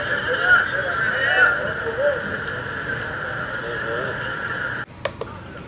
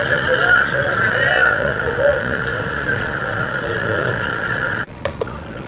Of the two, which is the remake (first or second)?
second